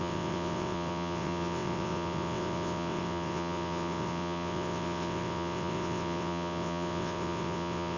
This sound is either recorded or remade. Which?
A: remade